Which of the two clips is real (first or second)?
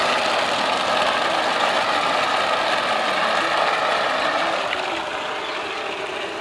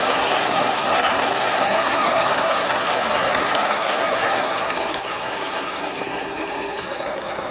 first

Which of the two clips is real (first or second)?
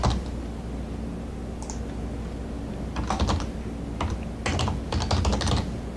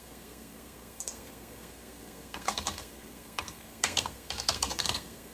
first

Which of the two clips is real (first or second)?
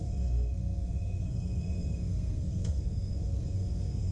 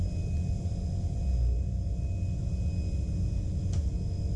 second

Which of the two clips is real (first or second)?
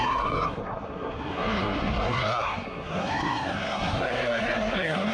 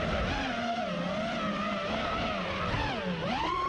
second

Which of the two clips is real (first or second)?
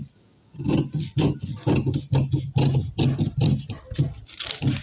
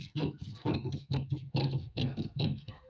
first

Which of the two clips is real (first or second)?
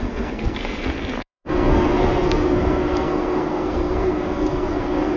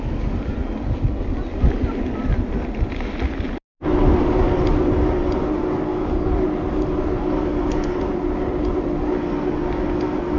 second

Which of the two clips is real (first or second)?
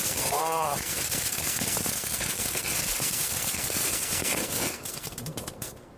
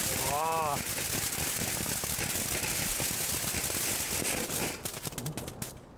second